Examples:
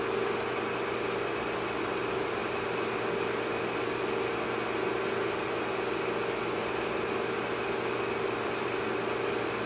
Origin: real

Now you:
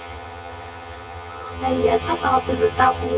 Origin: fake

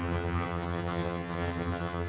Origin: fake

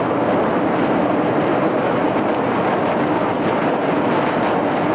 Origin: real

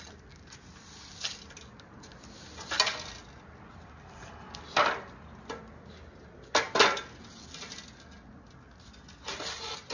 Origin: real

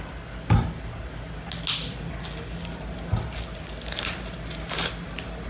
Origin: real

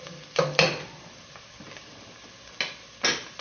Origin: real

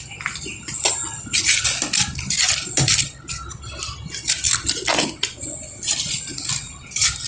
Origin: real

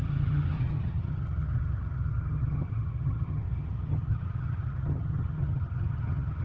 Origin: fake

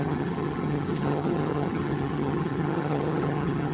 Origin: fake